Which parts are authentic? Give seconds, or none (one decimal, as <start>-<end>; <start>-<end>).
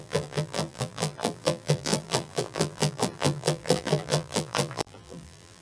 none